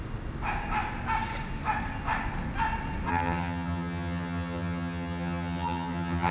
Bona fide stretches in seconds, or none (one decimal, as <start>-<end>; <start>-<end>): 0.0-3.1